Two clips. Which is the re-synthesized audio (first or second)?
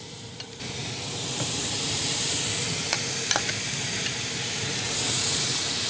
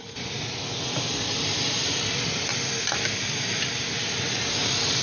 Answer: first